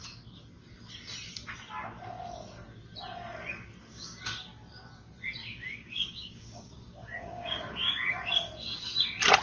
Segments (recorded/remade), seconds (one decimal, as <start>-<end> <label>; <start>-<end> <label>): 0.0-3.8 recorded; 3.8-4.4 remade; 4.4-5.4 recorded; 5.4-8.1 remade; 8.1-9.4 recorded